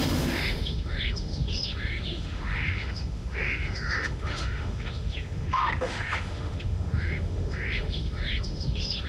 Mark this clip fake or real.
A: fake